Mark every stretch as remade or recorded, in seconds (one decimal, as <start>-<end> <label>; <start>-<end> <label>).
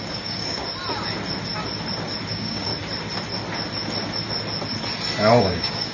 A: 0.0-0.6 remade; 0.6-2.3 recorded; 2.3-2.7 remade; 2.7-5.4 recorded; 5.4-5.9 remade